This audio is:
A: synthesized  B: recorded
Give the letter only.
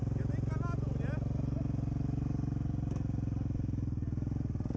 B